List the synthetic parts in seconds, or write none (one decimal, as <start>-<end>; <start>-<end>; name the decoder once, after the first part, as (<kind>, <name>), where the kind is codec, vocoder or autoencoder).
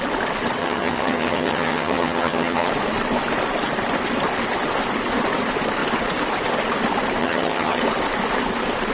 0.6-2.7 (vocoder, HiFi-GAN); 7.2-7.8